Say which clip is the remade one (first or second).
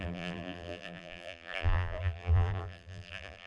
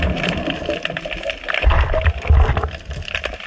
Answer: first